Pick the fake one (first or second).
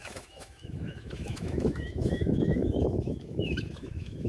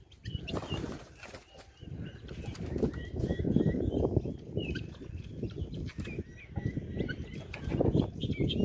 first